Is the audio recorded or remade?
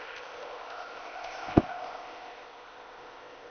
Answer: remade